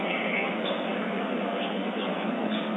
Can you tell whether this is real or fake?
fake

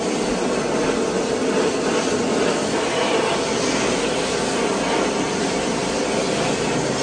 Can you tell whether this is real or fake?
real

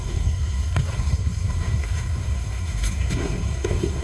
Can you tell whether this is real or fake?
fake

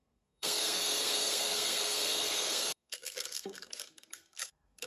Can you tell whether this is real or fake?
fake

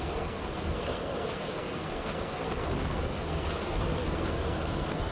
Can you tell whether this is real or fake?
fake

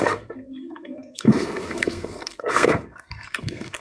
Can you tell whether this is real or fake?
fake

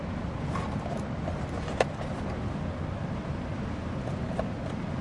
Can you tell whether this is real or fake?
real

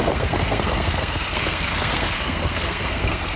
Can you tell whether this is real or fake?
fake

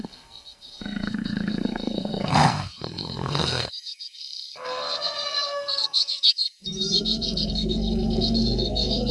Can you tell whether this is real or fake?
fake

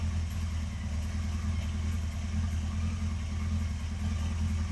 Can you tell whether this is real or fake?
real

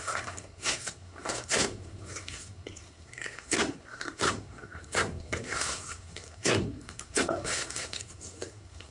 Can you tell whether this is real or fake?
fake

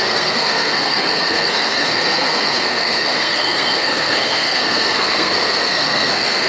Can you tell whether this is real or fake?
fake